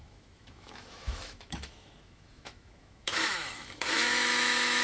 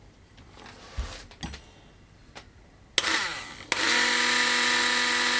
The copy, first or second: first